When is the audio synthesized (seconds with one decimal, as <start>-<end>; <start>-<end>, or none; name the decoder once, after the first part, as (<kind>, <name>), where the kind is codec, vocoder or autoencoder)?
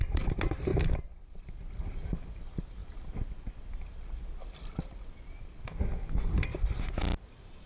none